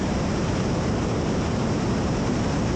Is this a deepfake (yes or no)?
yes